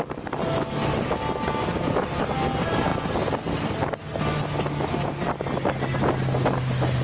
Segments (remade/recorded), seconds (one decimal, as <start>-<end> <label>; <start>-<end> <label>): 0.0-7.0 recorded